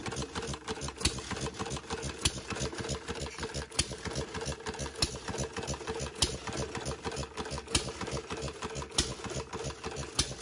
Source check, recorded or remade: recorded